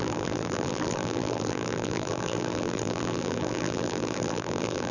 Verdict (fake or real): fake